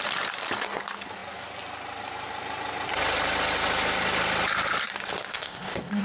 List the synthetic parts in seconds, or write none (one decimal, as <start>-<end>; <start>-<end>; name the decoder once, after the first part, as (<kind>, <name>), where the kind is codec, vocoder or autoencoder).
5.3-6.0 (codec, ZipCodec)